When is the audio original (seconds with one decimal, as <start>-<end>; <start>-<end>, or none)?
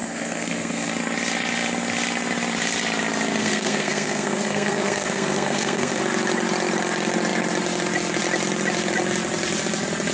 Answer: 0.9-3.4; 6.0-10.1